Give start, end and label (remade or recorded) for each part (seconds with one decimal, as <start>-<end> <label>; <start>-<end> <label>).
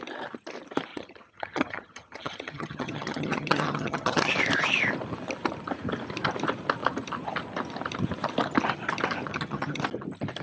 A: 0.0-0.9 recorded; 0.9-4.3 remade; 4.3-9.3 recorded; 9.3-9.8 remade; 9.8-10.4 recorded